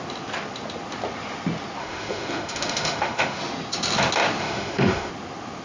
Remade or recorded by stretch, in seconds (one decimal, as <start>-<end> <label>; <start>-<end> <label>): 0.0-1.8 recorded; 1.8-3.4 remade; 3.4-4.4 recorded; 4.4-5.1 remade; 5.1-5.6 recorded